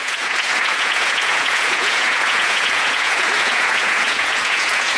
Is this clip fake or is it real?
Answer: fake